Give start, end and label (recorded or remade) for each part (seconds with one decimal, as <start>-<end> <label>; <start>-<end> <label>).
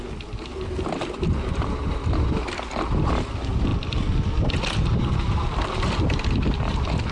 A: 0.0-7.1 recorded